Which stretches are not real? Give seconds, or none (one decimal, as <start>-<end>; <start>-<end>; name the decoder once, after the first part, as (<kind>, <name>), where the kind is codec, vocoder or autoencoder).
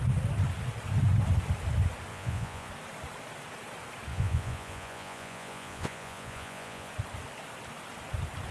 2.1-2.7 (vocoder, Vocos); 4.1-6.9